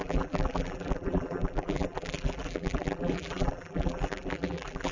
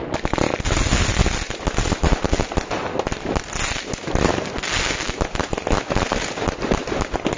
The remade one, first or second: first